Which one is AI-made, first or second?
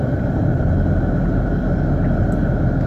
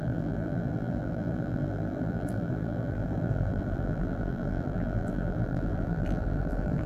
second